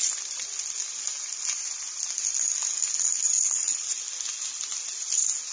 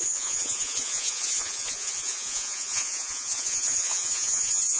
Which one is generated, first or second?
second